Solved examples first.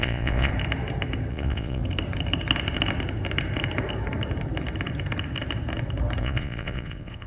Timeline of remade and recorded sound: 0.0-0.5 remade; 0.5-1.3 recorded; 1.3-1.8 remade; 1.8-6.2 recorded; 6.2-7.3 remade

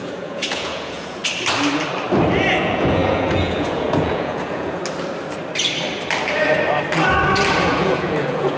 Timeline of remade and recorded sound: 0.0-1.2 remade; 1.2-2.3 recorded; 2.3-4.8 remade; 4.8-7.6 recorded; 7.6-8.6 remade

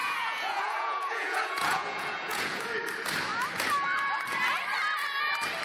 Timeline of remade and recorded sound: 0.0-2.6 remade; 2.6-5.6 recorded

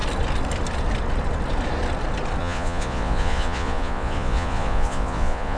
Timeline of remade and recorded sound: 0.0-2.4 recorded; 2.4-5.6 remade

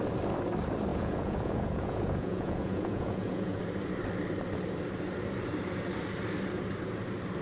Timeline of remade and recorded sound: 0.0-0.9 recorded; 0.9-3.6 remade; 3.6-7.4 recorded

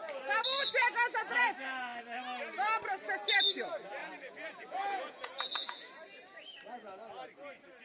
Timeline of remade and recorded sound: 0.0-4.0 recorded; 4.0-5.9 remade; 5.9-7.8 recorded

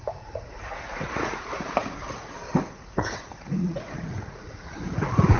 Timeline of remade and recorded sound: 0.0-5.4 remade

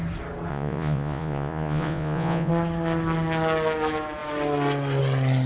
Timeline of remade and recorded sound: 0.0-0.5 recorded; 0.5-2.5 remade; 2.5-5.5 recorded